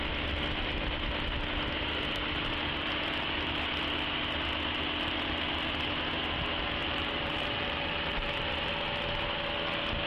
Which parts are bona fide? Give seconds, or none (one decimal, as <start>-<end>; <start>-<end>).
0.0-6.8; 8.7-10.1

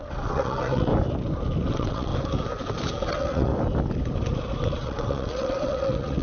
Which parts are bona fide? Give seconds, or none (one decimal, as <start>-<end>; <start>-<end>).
0.9-1.7; 2.1-3.1; 3.5-4.6

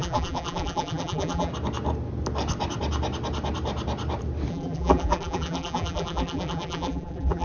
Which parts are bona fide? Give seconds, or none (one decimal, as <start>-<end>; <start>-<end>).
1.5-4.5

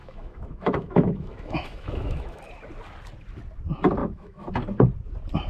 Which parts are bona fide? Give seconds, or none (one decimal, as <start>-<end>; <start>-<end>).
2.4-4.0; 4.5-5.5

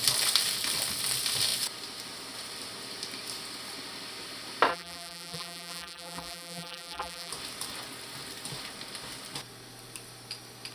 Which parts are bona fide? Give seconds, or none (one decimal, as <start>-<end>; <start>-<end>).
0.0-4.7; 7.3-10.7

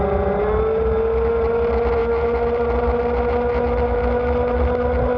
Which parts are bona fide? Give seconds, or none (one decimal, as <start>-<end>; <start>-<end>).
0.0-5.2

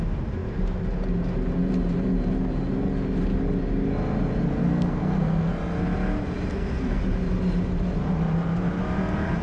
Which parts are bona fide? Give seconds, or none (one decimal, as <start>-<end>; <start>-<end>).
0.0-4.7; 5.5-6.5; 7.0-9.4